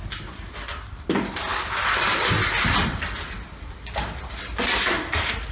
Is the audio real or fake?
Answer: real